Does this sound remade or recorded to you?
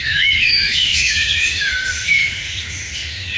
remade